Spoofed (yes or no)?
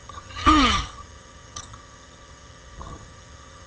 yes